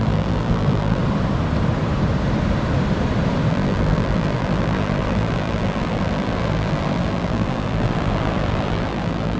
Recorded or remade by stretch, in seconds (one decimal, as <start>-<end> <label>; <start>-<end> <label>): 0.0-1.0 remade; 1.0-3.5 recorded; 3.5-9.4 remade